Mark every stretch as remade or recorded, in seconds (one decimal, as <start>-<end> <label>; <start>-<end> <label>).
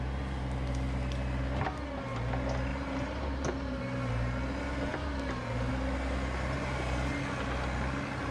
0.0-2.7 recorded; 2.7-3.8 remade; 3.8-8.3 recorded